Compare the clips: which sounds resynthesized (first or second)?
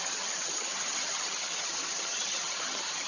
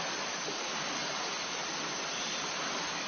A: first